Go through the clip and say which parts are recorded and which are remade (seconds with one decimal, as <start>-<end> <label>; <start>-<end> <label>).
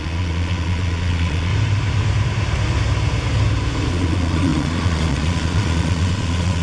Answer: 0.0-1.5 remade; 1.5-3.9 recorded; 3.9-6.6 remade